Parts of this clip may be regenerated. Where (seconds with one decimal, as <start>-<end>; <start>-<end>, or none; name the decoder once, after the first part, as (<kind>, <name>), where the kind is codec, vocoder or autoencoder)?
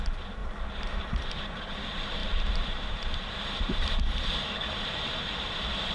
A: 0.0-0.4 (vocoder, BigVGAN v2); 1.0-5.9